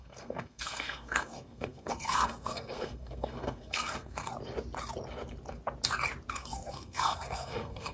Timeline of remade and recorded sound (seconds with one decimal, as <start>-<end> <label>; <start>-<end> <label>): 0.0-4.3 remade; 4.3-6.3 recorded; 6.3-7.9 remade

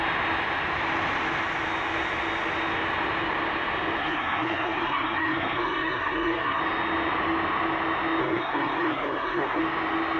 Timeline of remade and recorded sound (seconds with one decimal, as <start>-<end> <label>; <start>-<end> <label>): 0.0-4.0 recorded; 4.0-6.6 remade; 6.6-8.2 recorded; 8.2-9.6 remade; 9.6-10.2 recorded

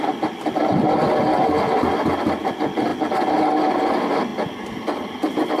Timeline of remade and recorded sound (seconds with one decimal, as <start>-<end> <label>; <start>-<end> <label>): 0.0-5.6 recorded

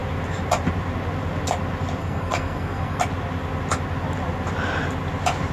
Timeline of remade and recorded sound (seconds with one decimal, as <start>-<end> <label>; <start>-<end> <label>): 0.0-2.0 recorded; 2.0-3.0 remade; 3.0-5.5 recorded